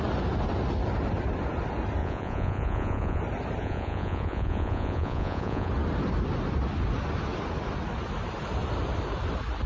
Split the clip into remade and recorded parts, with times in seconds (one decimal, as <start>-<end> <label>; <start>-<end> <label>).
0.0-2.0 recorded; 2.0-3.2 remade; 3.2-3.6 recorded; 3.6-5.7 remade; 5.7-9.7 recorded